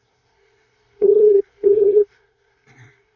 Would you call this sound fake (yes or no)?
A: yes